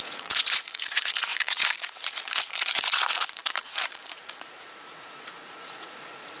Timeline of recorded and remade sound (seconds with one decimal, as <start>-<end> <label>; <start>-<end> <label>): 0.0-6.4 remade